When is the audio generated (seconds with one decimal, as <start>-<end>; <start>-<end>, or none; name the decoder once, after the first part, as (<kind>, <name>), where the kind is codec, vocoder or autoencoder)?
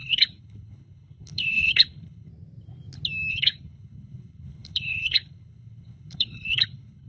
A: 0.0-2.3 (codec, HILCodec); 3.3-7.1